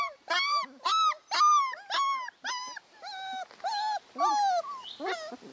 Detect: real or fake real